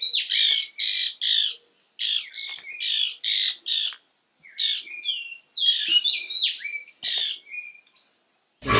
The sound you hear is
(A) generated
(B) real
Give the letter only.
B